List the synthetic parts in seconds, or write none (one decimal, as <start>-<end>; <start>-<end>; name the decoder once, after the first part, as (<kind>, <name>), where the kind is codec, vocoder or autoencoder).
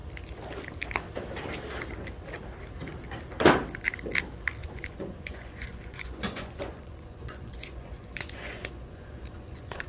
4.6-9.9 (vocoder, Vocos)